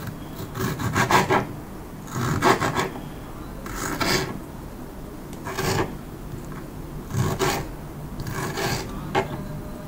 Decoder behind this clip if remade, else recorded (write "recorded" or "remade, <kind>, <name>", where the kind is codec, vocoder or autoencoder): recorded